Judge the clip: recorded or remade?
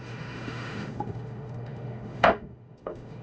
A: remade